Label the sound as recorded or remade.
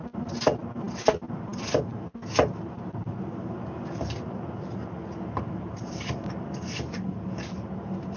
recorded